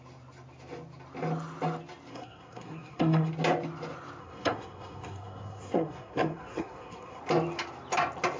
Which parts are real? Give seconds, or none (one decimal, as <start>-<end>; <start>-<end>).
0.0-2.1; 3.3-4.2; 7.2-8.4